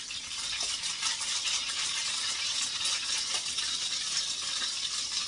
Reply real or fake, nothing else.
real